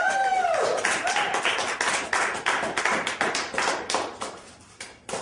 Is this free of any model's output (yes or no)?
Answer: no